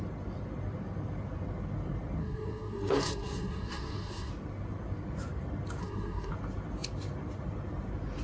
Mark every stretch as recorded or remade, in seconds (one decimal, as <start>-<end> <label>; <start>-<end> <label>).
0.0-2.2 recorded; 2.2-4.3 remade; 4.3-5.8 recorded; 5.8-6.3 remade; 6.3-8.2 recorded